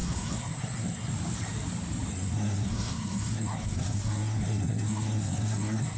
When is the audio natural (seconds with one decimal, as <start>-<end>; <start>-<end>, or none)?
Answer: 1.1-2.1